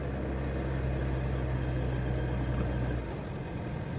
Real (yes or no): yes